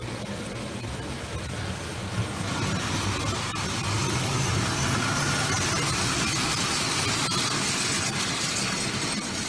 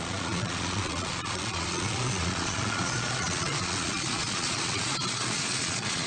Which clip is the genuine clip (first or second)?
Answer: first